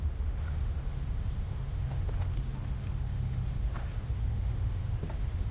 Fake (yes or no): yes